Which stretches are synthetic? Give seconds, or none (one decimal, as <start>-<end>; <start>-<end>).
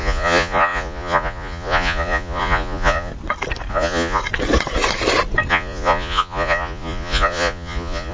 0.0-3.1; 3.7-4.2; 5.5-8.1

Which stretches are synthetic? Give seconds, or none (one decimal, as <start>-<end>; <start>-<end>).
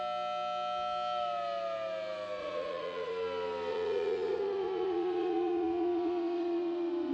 2.4-3.1; 3.7-7.1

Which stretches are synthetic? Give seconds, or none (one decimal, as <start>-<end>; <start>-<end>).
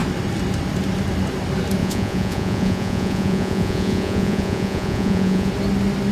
1.8-5.5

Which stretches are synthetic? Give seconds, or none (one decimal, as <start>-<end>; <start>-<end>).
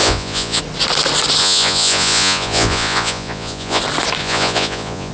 0.0-0.6; 1.4-3.8; 4.2-5.1